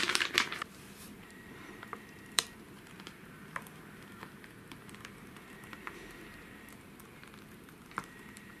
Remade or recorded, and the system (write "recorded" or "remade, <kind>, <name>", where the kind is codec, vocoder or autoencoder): remade, vocoder, BigVGAN v2